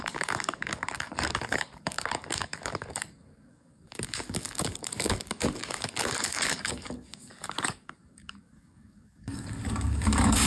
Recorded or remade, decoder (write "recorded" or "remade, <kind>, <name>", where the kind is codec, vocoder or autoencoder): remade, codec, DAC